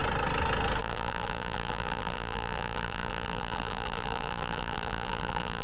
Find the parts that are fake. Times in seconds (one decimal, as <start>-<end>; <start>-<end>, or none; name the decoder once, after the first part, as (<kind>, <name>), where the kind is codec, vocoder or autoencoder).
0.8-5.6 (vocoder, BigVGAN v2)